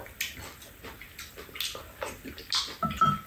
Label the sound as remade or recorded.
recorded